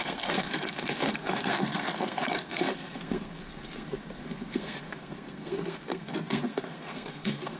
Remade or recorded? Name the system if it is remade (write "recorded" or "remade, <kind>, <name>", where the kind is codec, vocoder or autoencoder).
remade, codec, SNAC